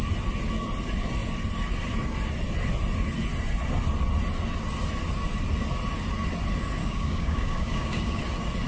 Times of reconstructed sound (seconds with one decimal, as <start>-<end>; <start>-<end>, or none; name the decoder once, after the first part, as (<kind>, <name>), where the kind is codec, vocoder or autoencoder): 6.8-8.2 (codec, DAC)